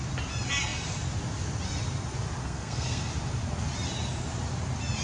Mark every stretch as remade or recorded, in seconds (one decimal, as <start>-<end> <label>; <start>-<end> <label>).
0.0-2.4 recorded; 2.4-3.1 remade; 3.1-5.0 recorded